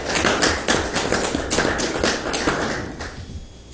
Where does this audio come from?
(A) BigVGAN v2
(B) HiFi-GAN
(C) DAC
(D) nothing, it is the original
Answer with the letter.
D